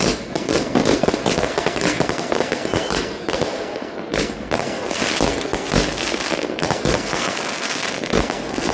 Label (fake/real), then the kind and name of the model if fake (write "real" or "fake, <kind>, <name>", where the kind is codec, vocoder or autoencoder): fake, codec, SNAC